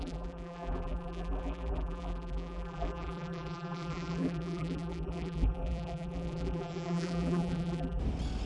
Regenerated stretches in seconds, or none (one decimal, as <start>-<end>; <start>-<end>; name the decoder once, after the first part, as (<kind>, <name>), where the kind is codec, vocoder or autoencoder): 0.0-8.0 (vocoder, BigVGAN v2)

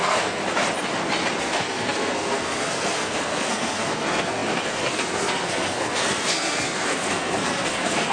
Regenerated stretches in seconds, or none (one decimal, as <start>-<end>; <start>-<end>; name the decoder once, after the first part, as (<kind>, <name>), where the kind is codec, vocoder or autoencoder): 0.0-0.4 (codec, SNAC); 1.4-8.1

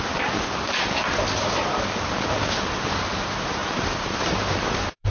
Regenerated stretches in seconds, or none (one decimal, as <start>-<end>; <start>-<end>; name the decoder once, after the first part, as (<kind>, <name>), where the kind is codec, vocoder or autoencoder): 3.6-5.1 (vocoder, BigVGAN v2)

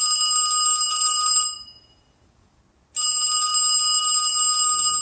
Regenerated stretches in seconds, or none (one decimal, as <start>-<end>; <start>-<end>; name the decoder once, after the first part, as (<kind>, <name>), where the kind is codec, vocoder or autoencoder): 0.9-2.6 (vocoder, Vocos)

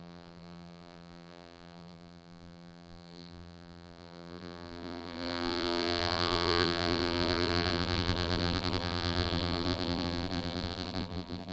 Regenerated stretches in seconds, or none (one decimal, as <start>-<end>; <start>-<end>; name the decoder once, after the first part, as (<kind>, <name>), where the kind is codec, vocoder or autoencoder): 0.0-11.5 (vocoder, BigVGAN v2)

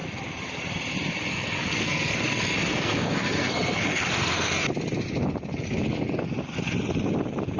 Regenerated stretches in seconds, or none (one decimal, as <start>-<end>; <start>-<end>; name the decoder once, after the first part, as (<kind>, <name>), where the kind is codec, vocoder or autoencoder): 1.3-4.5 (codec, SNAC)

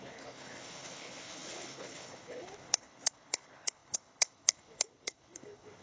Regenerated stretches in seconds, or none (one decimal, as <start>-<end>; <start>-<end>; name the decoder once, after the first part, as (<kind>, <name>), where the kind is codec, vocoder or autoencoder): 0.0-5.8 (codec, HILCodec)

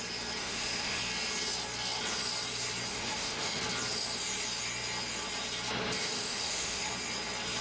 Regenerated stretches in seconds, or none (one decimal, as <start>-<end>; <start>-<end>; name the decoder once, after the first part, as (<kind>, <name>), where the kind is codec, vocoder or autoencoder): 0.4-1.0 (autoencoder, DAC-VAE); 2.9-3.6; 6.0-6.9